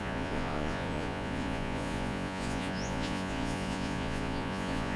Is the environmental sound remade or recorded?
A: remade